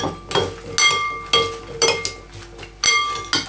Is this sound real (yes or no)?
yes